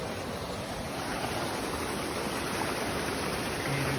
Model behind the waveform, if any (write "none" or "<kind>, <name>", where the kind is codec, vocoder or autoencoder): none